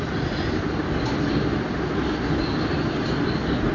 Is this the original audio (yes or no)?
yes